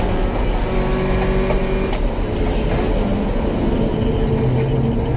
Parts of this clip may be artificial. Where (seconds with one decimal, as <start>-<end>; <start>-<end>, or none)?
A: 3.1-3.7